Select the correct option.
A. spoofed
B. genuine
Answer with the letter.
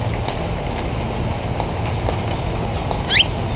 B